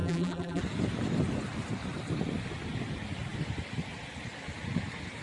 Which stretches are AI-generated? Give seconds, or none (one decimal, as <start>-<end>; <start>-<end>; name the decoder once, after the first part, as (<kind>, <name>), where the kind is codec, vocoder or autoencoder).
0.0-0.6 (vocoder, BigVGAN v2)